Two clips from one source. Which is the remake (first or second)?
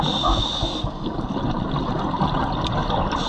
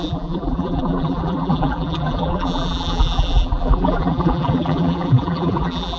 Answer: second